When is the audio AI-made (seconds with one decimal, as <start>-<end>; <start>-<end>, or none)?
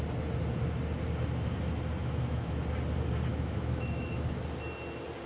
2.0-2.6; 3.3-4.4